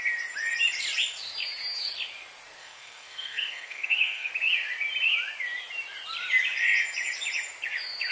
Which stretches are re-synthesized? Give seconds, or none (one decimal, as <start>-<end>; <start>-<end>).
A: 2.6-4.3